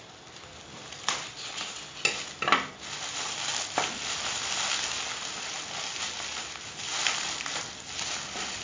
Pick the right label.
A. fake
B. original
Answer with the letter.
B